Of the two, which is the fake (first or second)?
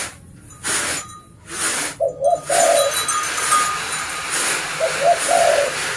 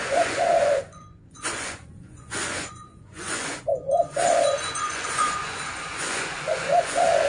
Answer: second